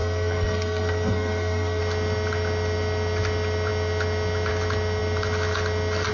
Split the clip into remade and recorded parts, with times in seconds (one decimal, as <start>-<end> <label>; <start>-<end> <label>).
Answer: 0.0-1.8 remade; 1.8-6.1 recorded